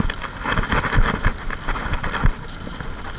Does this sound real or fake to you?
real